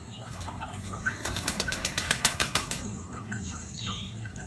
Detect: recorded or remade remade